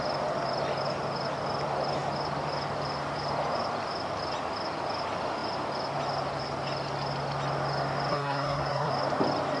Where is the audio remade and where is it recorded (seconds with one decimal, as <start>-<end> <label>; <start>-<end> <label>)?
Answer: 0.0-8.1 recorded; 8.1-8.9 remade; 8.9-9.6 recorded